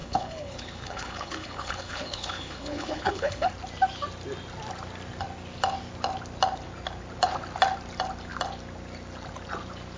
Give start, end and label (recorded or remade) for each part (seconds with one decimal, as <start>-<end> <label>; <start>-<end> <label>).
0.0-3.5 remade; 3.5-10.0 recorded